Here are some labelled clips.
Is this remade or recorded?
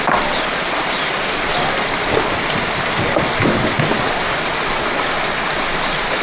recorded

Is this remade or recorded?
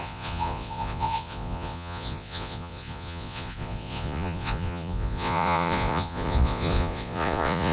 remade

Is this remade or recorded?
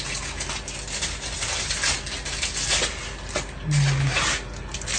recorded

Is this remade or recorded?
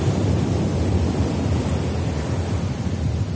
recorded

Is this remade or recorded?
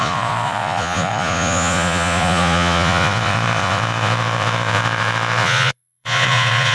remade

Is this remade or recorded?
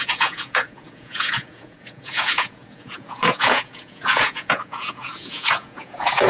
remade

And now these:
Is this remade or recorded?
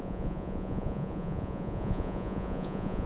remade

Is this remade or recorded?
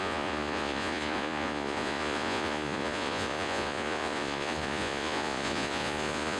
remade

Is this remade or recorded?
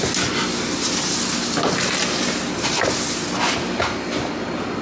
recorded